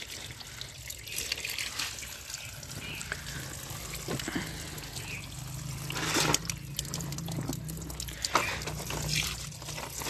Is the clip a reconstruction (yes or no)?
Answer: no